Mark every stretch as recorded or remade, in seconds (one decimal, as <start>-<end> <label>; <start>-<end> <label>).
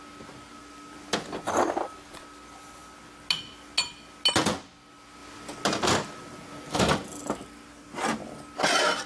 0.0-9.1 recorded